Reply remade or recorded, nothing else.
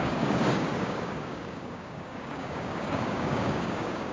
remade